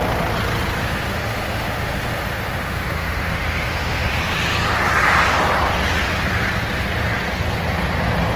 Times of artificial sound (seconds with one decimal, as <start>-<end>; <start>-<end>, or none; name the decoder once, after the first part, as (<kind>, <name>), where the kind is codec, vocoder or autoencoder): 0.8-4.2 (autoencoder, DAC-VAE)

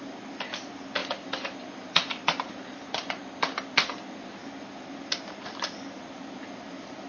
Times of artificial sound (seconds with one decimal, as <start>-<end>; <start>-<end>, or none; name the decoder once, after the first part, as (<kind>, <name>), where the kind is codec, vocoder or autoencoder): 1.0-3.6 (vocoder, BigVGAN v2)

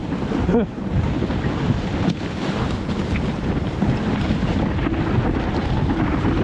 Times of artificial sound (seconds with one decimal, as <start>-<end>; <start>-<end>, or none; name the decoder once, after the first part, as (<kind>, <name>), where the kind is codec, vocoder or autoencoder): none

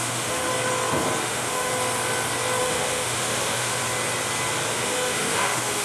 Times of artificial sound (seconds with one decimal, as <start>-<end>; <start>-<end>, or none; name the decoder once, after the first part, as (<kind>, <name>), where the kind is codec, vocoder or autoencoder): 0.0-0.5 (autoencoder, DAC-VAE); 1.2-1.7; 2.6-3.8; 4.7-5.8

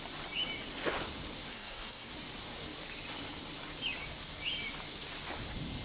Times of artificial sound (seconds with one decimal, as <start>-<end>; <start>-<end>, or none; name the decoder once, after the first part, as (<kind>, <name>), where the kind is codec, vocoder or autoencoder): 1.5-2.1 (codec, SNAC)

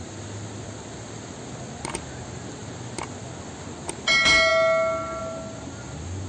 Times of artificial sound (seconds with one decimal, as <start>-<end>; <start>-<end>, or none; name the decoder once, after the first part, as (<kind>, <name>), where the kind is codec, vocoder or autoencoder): none

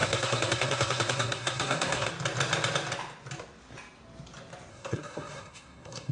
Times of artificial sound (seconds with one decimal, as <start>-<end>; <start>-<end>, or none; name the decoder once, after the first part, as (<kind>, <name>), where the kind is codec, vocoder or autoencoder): 0.0-2.1 (codec, SNAC); 4.7-6.1